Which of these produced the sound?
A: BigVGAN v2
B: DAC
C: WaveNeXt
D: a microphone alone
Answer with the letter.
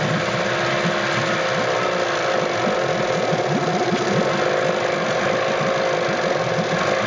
D